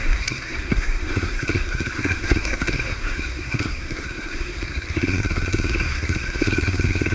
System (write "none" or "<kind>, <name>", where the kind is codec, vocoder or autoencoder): codec, SNAC